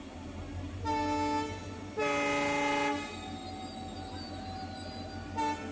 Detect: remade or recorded recorded